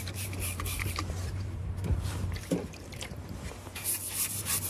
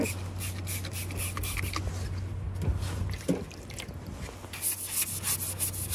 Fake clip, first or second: first